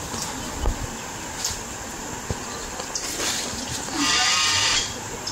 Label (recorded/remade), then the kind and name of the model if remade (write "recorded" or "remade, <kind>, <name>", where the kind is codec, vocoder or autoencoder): recorded